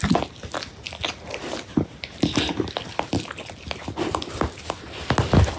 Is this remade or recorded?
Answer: recorded